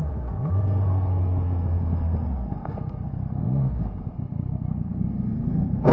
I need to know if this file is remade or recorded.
remade